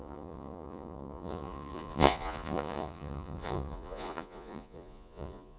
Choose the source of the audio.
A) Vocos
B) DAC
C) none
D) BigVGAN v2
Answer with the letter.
A